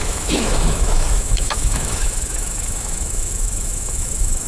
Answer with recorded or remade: remade